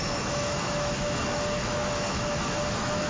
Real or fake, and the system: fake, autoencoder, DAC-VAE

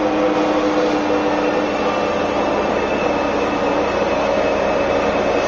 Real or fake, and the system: real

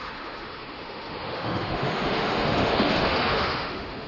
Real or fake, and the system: fake, autoencoder, DAC-VAE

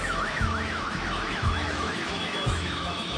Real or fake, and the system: fake, autoencoder, DAC-VAE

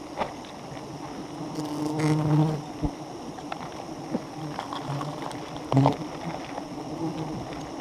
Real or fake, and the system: real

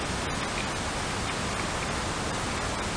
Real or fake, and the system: real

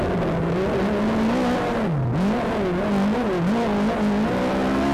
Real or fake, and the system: real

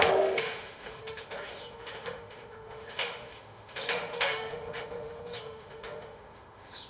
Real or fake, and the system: fake, autoencoder, DAC-VAE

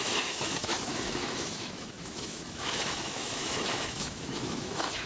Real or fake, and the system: fake, autoencoder, DAC-VAE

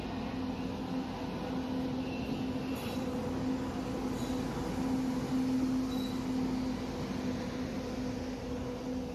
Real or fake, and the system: real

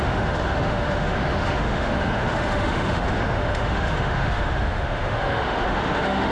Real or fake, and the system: fake, autoencoder, DAC-VAE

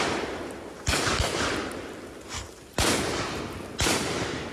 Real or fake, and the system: real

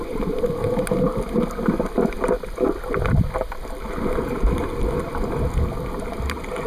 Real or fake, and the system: real